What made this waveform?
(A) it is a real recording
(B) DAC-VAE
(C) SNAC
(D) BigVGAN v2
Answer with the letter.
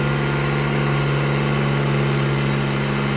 A